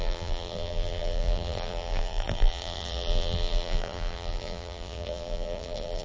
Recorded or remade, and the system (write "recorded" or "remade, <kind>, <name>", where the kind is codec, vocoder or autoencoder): remade, vocoder, BigVGAN v2